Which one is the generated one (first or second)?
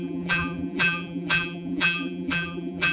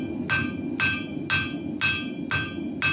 first